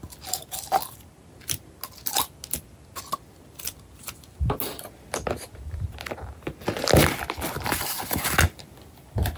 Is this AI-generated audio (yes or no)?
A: no